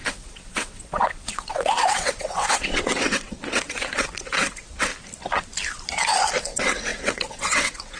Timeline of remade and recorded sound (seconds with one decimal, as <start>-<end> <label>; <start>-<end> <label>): 0.0-4.9 remade; 4.9-6.4 recorded; 6.4-8.0 remade